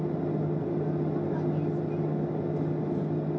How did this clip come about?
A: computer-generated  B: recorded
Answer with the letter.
B